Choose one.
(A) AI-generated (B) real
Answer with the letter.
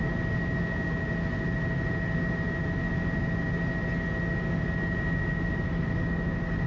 B